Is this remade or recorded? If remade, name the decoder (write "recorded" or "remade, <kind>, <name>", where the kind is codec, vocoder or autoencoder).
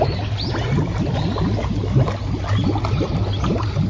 recorded